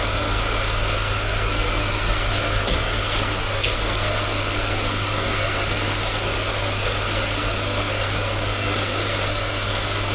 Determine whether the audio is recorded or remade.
remade